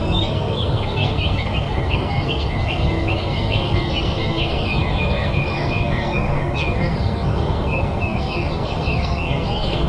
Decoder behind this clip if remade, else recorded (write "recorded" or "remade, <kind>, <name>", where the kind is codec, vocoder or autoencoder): remade, codec, SNAC